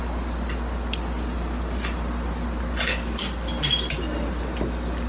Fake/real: real